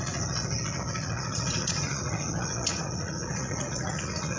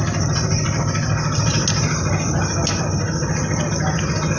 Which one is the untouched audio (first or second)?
second